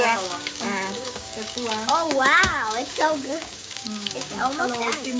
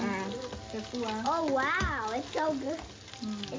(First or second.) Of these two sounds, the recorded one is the second